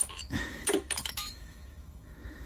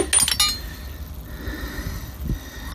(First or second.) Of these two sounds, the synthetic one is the first